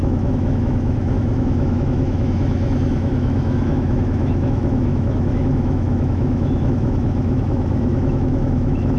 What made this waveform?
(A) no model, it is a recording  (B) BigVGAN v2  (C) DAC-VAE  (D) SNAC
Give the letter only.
C